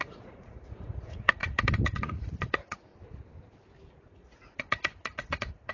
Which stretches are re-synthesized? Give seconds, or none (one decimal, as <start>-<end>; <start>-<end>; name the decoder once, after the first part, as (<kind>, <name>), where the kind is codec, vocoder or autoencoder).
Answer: 0.0-2.9 (vocoder, Vocos); 4.0-5.7